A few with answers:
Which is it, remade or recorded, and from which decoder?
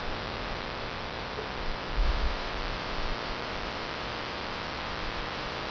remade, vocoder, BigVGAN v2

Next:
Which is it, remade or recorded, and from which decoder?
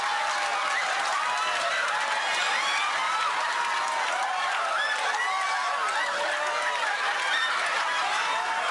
recorded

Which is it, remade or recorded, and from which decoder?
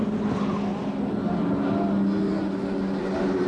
recorded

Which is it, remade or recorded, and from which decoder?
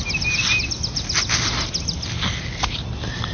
recorded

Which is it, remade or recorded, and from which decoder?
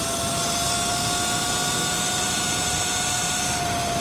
recorded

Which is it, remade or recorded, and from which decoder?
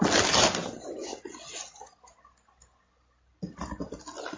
recorded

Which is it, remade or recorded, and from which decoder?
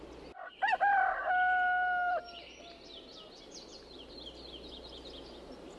recorded